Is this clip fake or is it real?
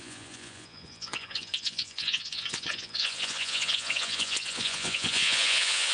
fake